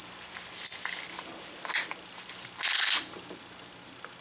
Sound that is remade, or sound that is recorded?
recorded